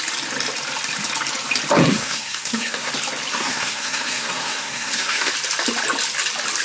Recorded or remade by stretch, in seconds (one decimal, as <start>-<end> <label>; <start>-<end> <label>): 0.0-1.8 recorded; 1.8-2.9 remade; 2.9-3.3 recorded; 3.3-5.3 remade; 5.3-6.6 recorded

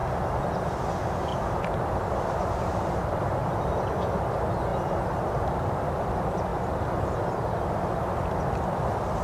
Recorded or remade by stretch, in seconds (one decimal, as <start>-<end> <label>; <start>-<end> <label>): 0.0-1.3 recorded; 1.3-3.7 remade; 3.7-4.7 recorded; 4.7-5.8 remade; 5.8-6.5 recorded; 6.5-7.6 remade; 7.6-9.2 recorded

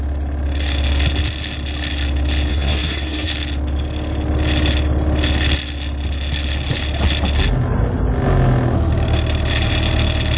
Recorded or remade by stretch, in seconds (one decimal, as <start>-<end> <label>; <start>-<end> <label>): 0.0-2.5 recorded; 2.5-3.3 remade; 3.3-10.4 recorded

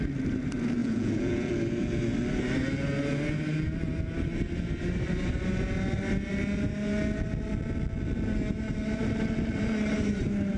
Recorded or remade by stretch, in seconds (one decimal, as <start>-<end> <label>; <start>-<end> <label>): 0.0-0.8 recorded; 0.8-1.5 remade; 1.5-10.6 recorded

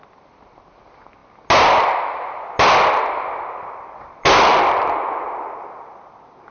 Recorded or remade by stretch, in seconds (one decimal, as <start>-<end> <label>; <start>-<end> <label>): 0.0-6.5 recorded